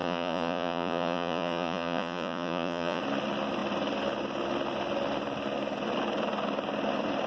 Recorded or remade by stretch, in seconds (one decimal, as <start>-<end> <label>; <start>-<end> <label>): 0.0-3.0 remade; 3.0-7.3 recorded